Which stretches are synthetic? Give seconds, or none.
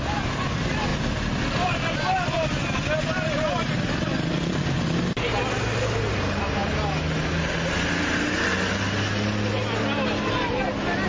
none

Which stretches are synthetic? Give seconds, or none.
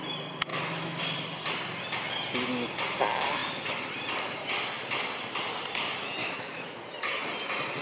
0.5-1.0 (autoencoder, DAC-VAE); 6.2-6.8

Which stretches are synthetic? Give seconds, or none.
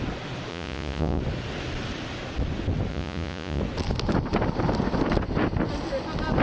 0.5-1.2 (vocoder, Vocos); 2.9-3.6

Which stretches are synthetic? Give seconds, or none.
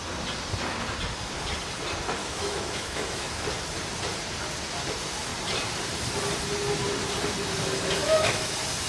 2.2-3.4 (autoencoder, DAC-VAE); 8.0-8.5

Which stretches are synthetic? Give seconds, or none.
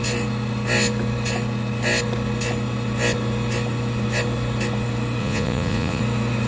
5.2-6.0 (vocoder, Vocos)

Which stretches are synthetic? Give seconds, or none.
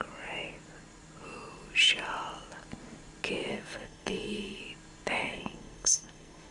3.5-4.6 (codec, SNAC); 5.2-6.5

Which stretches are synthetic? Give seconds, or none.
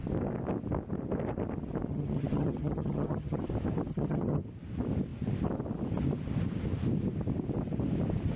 1.9-3.4 (vocoder, HiFi-GAN); 3.9-4.4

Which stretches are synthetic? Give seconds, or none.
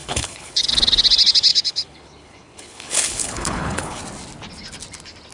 0.0-0.7 (codec, HILCodec); 1.5-4.0